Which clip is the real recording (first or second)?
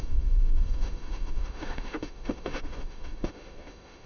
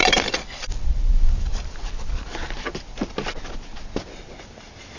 second